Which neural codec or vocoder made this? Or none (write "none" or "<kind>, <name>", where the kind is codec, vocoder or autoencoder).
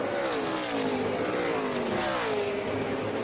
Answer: none